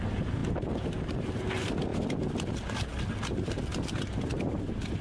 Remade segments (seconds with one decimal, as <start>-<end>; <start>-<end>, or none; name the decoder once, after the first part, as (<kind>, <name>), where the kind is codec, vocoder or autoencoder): none